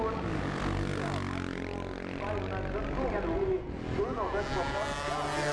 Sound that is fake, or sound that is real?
real